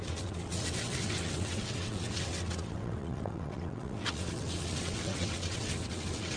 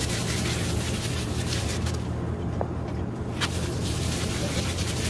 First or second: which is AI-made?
first